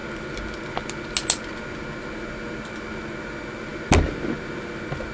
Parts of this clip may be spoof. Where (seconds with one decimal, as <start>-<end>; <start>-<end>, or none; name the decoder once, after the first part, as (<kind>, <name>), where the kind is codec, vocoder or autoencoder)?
none